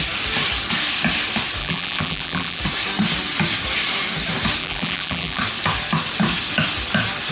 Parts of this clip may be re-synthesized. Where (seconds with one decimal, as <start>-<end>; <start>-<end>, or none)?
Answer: 1.6-2.6; 4.6-5.4